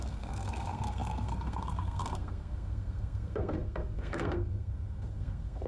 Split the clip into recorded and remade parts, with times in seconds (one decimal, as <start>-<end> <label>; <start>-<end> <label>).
0.0-5.7 remade